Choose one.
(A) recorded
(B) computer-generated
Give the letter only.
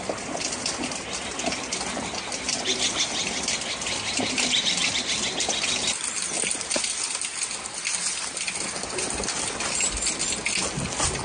A